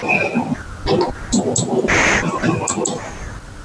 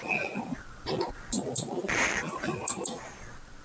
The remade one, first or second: second